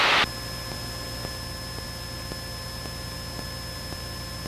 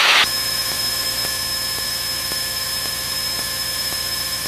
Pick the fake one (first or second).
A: second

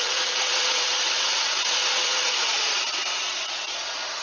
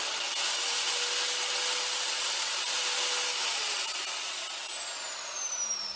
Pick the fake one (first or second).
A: first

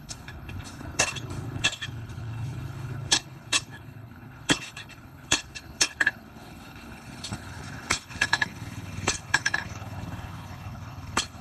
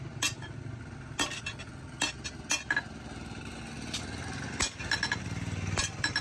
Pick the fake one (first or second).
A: first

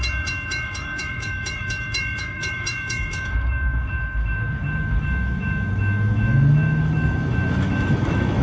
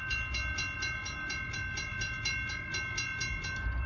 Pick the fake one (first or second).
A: first